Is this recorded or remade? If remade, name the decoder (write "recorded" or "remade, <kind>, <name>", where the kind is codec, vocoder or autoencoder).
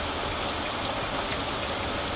recorded